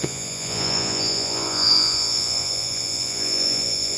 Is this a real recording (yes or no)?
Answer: no